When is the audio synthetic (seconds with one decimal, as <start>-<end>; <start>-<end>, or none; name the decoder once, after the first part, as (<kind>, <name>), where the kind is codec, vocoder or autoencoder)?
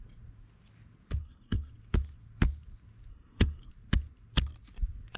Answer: 1.2-1.7 (codec, SNAC); 3.1-3.7